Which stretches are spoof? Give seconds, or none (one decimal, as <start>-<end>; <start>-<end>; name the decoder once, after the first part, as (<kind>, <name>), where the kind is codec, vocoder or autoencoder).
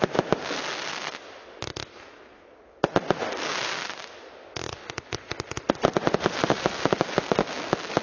none